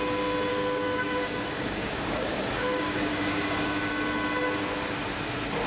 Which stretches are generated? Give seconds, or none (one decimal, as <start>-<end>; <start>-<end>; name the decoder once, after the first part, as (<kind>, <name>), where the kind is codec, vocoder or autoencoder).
0.5-3.9 (codec, DAC)